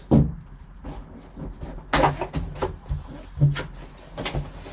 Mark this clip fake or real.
real